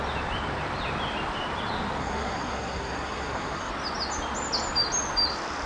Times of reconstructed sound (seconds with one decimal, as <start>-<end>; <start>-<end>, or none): 2.0-3.7